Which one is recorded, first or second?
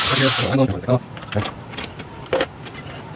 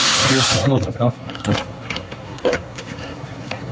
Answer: first